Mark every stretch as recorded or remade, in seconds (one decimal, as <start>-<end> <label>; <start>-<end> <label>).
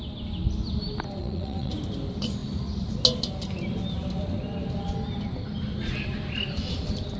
0.0-1.2 recorded; 1.2-1.7 remade; 1.7-7.2 recorded